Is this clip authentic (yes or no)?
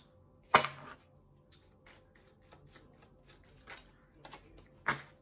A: yes